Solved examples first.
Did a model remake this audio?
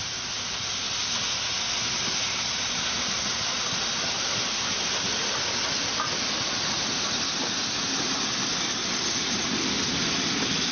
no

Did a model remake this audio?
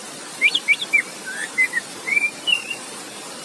yes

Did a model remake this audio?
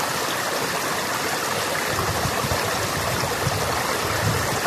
no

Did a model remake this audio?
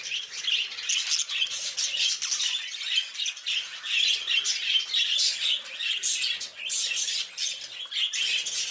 no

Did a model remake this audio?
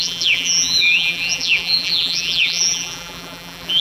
yes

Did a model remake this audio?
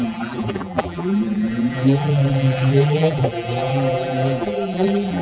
yes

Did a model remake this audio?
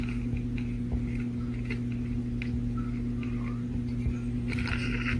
no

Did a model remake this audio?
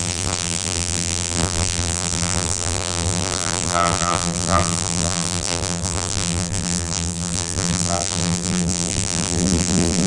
yes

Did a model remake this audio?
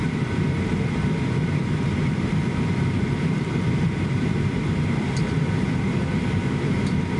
yes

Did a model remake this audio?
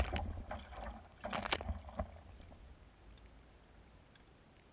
no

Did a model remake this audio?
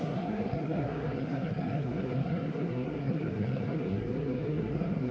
yes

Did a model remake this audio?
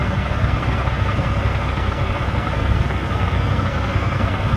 yes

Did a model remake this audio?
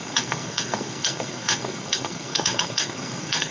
yes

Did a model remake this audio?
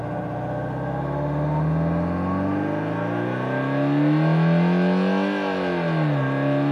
no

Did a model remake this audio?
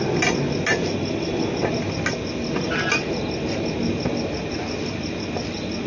no